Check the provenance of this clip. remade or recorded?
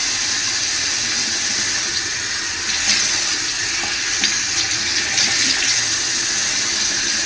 recorded